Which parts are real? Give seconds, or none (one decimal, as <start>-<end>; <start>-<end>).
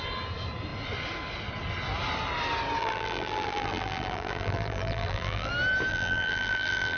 0.0-2.8; 5.5-5.9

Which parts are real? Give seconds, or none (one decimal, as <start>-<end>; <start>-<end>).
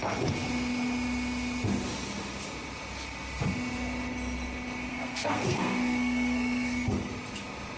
0.0-4.9; 7.1-7.8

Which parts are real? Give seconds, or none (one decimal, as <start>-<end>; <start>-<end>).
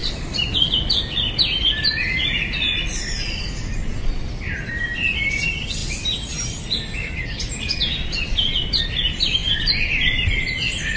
0.0-11.0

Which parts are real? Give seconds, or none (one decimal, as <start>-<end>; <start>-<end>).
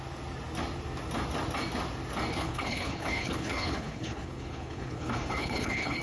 0.0-2.3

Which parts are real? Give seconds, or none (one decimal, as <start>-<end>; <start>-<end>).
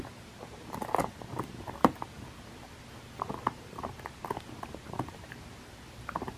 1.0-4.8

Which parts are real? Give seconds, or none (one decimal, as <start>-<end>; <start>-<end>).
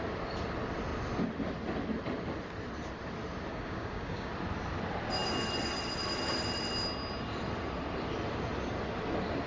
0.0-3.5; 4.3-9.5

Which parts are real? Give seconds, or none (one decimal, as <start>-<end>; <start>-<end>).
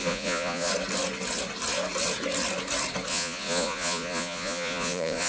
0.7-3.1